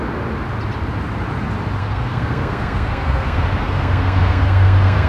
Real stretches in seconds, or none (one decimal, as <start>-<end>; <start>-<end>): 0.0-1.8